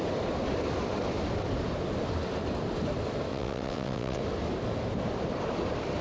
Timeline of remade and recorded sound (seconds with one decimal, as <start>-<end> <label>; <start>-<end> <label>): 0.0-3.3 recorded; 3.3-4.2 remade; 4.2-6.0 recorded